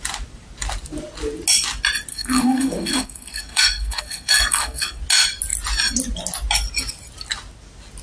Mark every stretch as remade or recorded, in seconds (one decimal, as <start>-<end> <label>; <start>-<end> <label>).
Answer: 0.0-2.1 recorded; 2.1-5.0 remade; 5.0-8.0 recorded